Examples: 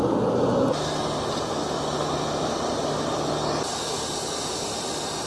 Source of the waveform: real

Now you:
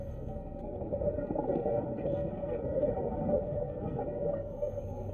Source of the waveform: fake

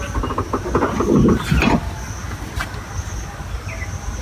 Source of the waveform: real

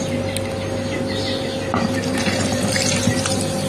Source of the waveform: real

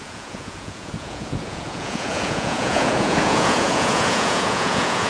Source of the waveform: fake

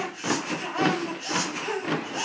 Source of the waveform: real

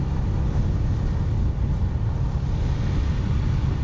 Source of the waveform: real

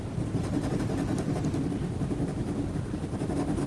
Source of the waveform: real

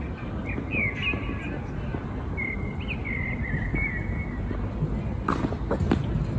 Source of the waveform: real